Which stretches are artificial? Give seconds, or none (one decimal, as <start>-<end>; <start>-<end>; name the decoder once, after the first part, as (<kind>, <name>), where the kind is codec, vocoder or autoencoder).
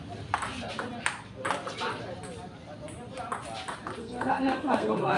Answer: 4.0-5.2 (codec, SNAC)